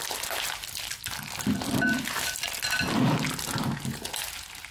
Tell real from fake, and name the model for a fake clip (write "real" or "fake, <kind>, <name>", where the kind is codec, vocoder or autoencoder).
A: real